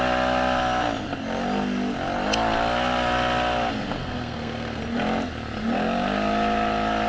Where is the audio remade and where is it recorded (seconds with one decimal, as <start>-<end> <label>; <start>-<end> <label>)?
0.0-4.0 recorded; 4.0-4.8 remade; 4.8-7.1 recorded